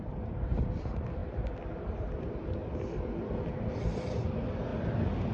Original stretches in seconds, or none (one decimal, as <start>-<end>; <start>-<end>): 1.2-1.7; 2.6-3.6; 4.7-5.3